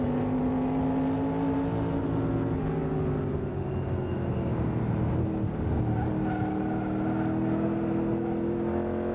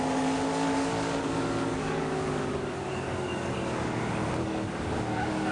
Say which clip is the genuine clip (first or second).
first